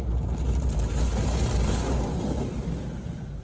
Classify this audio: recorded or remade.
recorded